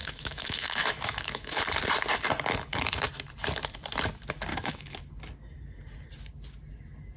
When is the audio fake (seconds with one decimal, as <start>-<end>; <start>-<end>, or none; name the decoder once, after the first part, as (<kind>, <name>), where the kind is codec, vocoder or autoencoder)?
0.0-1.6 (autoencoder, DAC-VAE); 4.5-5.0